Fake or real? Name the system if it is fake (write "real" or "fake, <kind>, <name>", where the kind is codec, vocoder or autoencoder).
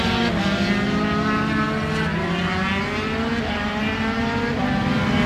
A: real